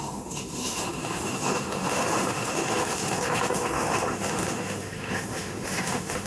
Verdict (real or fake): fake